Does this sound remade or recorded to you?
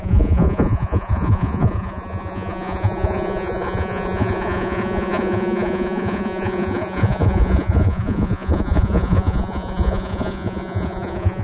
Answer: remade